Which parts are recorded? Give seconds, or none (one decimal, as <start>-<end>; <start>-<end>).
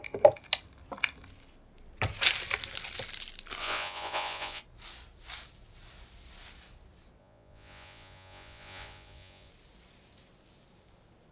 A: 0.0-3.6; 4.6-7.2; 9.5-11.3